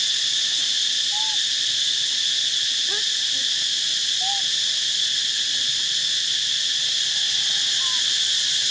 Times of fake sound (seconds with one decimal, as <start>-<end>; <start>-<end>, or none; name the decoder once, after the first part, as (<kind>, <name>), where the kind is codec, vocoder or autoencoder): none